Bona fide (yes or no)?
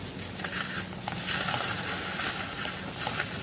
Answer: yes